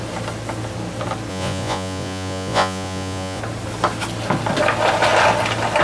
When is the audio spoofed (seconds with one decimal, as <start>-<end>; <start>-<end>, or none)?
1.3-3.4